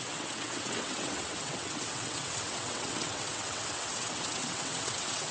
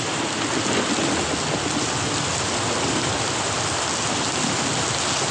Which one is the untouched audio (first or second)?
second